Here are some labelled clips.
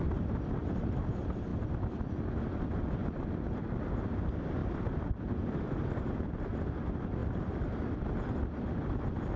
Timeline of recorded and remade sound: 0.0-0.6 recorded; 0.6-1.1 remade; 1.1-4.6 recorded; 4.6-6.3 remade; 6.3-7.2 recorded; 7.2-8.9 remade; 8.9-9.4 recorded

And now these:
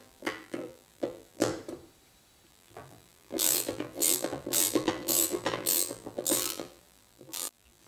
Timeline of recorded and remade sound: 0.0-1.5 remade; 1.5-2.5 recorded; 2.5-7.9 remade